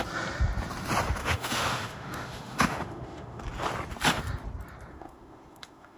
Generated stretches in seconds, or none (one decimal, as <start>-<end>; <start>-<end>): 1.2-3.4; 4.9-6.0